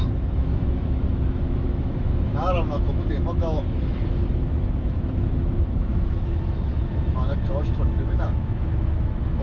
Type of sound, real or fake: fake